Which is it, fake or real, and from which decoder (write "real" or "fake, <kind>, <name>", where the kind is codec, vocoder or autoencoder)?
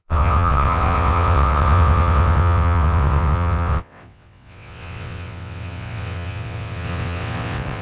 fake, vocoder, WaveNeXt